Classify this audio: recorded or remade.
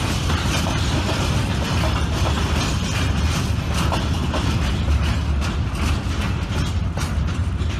recorded